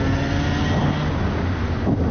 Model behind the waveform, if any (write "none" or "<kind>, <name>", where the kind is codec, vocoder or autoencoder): none